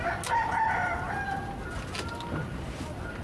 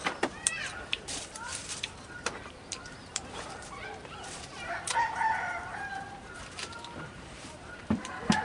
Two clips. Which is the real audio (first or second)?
first